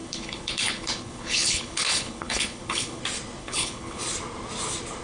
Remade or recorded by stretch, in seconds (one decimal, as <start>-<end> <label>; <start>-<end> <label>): 0.0-3.0 remade; 3.0-3.4 recorded; 3.4-4.0 remade; 4.0-5.0 recorded